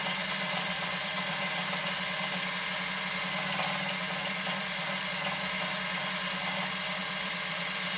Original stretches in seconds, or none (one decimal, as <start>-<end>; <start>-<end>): 1.4-4.2; 5.1-7.0